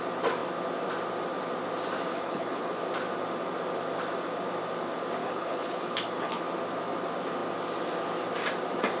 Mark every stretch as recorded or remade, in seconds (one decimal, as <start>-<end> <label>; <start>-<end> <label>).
0.0-2.1 recorded; 2.1-2.7 remade; 2.7-5.2 recorded; 5.2-6.4 remade; 6.4-9.0 recorded